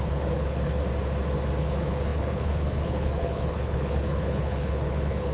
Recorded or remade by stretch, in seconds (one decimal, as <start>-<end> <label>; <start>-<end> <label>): 0.0-0.8 remade; 0.8-1.6 recorded; 1.6-5.3 remade